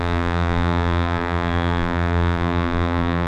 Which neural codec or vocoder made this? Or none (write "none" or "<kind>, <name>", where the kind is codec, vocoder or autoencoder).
vocoder, BigVGAN v2